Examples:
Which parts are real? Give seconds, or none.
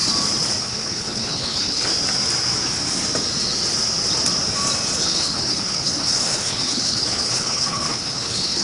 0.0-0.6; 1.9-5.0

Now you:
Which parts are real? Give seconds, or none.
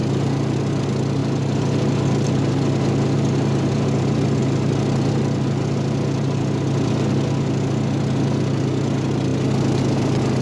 0.0-10.4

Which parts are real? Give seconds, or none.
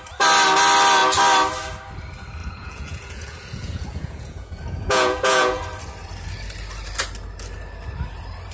0.0-2.4; 5.6-8.5